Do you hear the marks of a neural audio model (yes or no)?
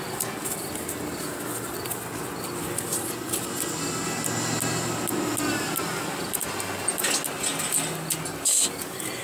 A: no